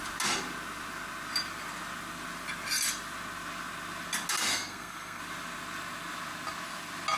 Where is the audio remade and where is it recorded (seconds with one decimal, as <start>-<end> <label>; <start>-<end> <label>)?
0.0-4.5 recorded; 4.5-5.2 remade; 5.2-7.2 recorded